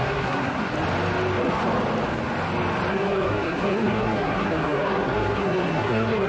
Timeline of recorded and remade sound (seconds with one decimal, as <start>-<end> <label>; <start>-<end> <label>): 0.0-0.7 remade; 0.7-2.9 recorded; 2.9-6.3 remade